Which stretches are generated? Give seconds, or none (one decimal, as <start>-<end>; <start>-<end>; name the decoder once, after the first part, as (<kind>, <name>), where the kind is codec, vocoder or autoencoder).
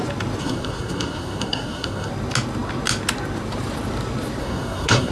0.4-2.1 (codec, SNAC); 4.4-5.1